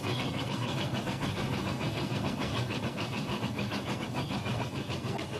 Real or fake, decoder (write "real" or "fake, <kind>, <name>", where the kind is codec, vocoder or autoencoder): fake, codec, SNAC